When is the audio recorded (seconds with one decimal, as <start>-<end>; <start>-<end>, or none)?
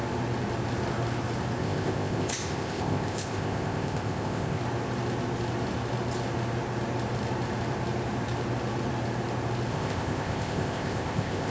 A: 0.0-1.6; 4.6-9.7